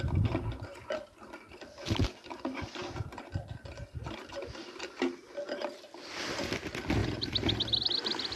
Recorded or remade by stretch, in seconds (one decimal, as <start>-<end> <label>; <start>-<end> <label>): 0.0-0.7 recorded; 0.7-2.0 remade; 2.0-2.8 recorded; 2.8-4.3 remade; 4.3-7.0 recorded; 7.0-7.5 remade; 7.5-8.4 recorded

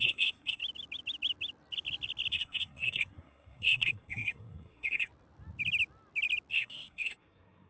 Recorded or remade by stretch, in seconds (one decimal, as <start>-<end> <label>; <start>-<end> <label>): 0.0-0.6 remade; 0.6-2.3 recorded; 2.3-5.1 remade; 5.1-6.5 recorded; 6.5-7.7 remade